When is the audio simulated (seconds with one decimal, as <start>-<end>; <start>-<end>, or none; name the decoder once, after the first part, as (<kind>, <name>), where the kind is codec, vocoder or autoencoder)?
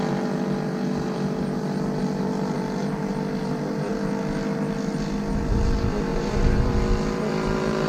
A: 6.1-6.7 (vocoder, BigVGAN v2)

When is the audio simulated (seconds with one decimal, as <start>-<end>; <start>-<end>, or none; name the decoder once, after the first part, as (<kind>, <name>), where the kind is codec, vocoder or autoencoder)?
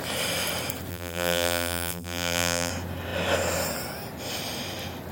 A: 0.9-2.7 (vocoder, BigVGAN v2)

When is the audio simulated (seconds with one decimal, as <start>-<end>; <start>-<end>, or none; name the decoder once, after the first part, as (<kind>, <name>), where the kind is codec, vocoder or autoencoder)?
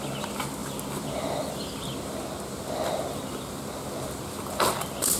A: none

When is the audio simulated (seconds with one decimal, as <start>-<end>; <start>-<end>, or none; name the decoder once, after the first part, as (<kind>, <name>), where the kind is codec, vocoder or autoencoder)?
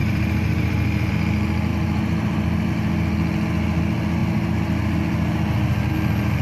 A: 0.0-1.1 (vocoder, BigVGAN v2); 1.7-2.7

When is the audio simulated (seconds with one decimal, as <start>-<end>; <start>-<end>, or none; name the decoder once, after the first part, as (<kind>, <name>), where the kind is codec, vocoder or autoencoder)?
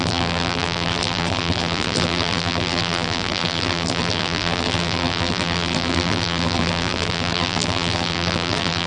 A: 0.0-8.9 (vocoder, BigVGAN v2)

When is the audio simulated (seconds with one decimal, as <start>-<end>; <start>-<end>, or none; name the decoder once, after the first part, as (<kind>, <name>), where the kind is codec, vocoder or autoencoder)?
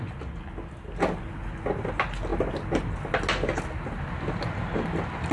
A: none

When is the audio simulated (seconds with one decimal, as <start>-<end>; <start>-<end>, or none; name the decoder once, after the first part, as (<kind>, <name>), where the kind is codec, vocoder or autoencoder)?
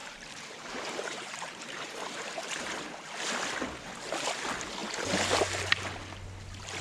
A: 0.0-3.3 (vocoder, BigVGAN v2)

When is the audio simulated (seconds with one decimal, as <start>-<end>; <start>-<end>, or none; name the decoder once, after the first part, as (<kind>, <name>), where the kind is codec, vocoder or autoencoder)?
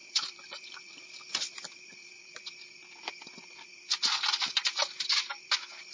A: 0.0-2.2 (vocoder, BigVGAN v2)